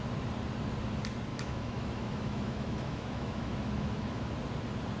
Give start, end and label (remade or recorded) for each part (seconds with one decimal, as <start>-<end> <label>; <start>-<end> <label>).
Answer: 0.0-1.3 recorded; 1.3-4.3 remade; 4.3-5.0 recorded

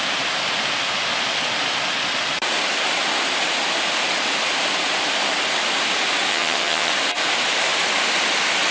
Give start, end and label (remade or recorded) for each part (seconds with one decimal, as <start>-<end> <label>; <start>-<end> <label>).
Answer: 0.0-6.3 recorded; 6.3-6.9 remade; 6.9-8.7 recorded

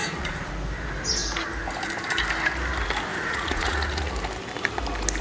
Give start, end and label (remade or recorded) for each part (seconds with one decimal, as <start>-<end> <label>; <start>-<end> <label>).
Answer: 0.0-0.5 remade; 0.5-3.1 recorded; 3.1-4.1 remade; 4.1-5.2 recorded

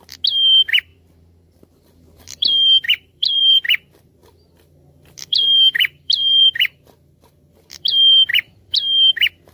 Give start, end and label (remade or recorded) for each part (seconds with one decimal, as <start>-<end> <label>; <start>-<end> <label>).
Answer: 0.0-0.9 recorded; 0.9-3.4 remade; 3.4-4.2 recorded; 4.2-9.1 remade; 9.1-9.5 recorded

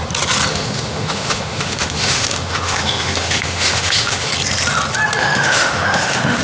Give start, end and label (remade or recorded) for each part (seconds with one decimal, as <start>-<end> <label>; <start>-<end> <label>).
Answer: 0.0-0.5 recorded; 0.5-4.3 remade; 4.3-5.2 recorded; 5.2-6.4 remade

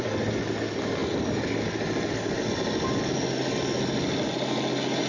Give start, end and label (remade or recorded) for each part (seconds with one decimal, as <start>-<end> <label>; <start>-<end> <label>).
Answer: 0.0-5.1 recorded

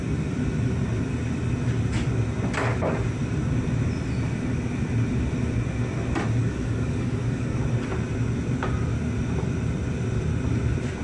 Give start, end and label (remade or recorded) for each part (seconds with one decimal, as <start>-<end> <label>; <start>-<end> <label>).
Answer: 0.0-6.4 recorded; 6.4-7.6 remade; 7.6-11.0 recorded